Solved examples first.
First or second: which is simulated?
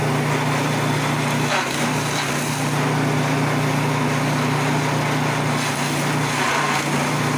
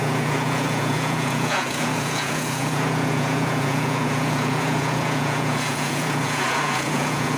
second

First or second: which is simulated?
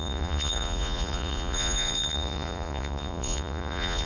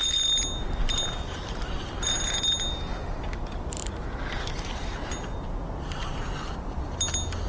first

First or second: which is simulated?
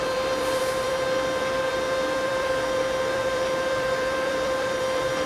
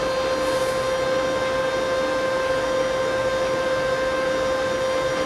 first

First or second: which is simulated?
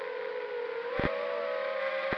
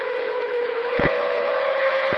second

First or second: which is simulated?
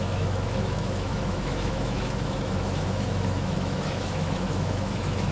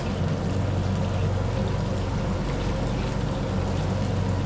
first